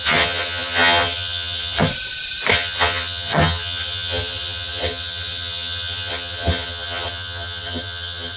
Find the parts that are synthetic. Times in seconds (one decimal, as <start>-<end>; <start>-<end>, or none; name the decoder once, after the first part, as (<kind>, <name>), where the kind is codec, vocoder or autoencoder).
0.0-1.9 (vocoder, HiFi-GAN); 2.5-8.4